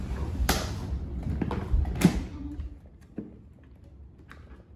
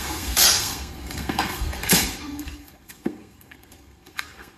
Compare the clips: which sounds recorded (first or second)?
first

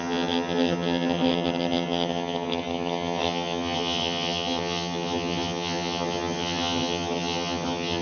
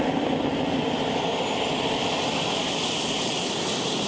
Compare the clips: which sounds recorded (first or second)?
second